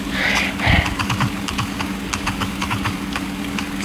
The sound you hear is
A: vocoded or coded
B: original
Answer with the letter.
A